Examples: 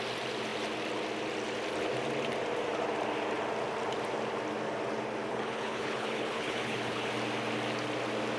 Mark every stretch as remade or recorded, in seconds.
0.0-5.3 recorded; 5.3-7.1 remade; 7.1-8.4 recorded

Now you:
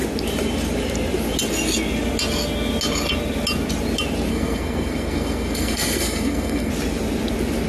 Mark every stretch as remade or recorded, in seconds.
0.0-4.3 recorded; 4.3-6.7 remade; 6.7-7.7 recorded

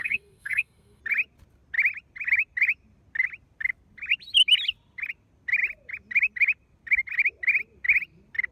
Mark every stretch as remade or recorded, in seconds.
0.0-1.0 remade; 1.0-8.5 recorded

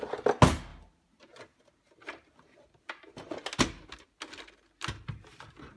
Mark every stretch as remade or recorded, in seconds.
0.0-5.8 recorded

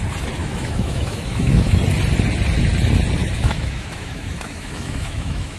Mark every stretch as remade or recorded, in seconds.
0.0-0.4 recorded; 0.4-1.8 remade; 1.8-3.2 recorded; 3.2-5.6 remade

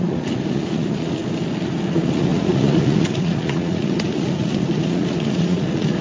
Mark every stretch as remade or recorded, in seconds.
0.0-1.2 remade; 1.2-1.9 recorded; 1.9-6.0 remade

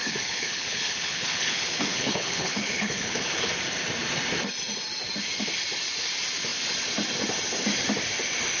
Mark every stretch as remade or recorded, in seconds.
0.0-3.5 remade; 3.5-8.6 recorded

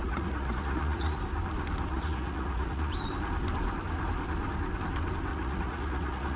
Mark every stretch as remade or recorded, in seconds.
0.0-1.2 remade; 1.2-1.9 recorded; 1.9-2.9 remade; 2.9-5.3 recorded; 5.3-6.4 remade